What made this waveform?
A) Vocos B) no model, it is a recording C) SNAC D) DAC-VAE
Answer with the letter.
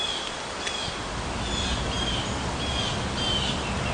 B